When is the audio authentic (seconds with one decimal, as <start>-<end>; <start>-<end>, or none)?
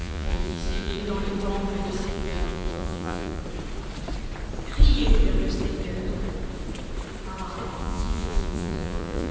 1.0-2.1; 3.4-7.8